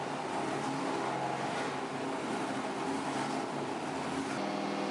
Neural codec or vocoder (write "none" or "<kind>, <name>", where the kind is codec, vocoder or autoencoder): none